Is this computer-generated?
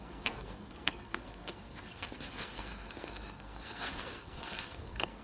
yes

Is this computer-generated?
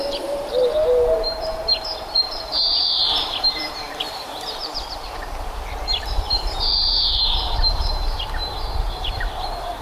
yes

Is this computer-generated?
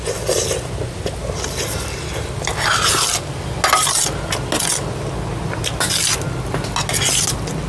no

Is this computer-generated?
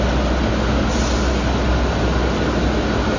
no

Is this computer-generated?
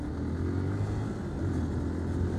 no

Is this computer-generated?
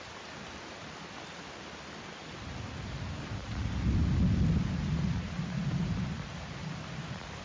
no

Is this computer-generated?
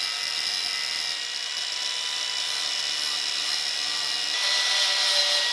no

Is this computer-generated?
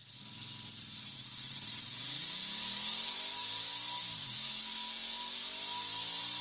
no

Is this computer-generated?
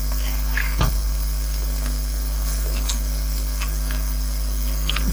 yes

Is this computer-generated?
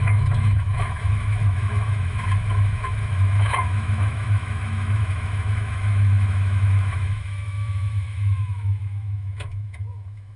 yes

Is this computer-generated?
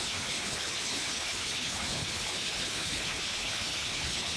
yes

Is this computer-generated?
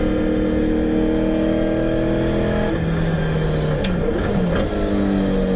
no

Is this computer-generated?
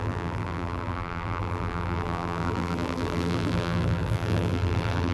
yes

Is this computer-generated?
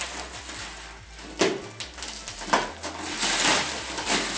no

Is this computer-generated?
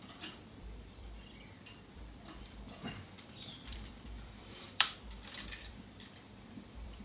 yes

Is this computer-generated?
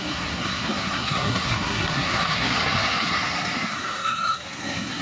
yes